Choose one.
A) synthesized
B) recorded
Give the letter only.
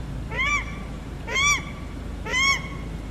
A